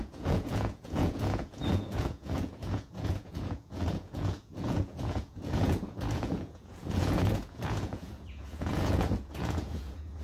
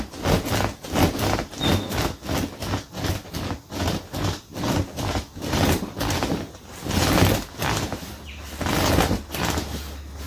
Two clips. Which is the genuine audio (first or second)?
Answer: second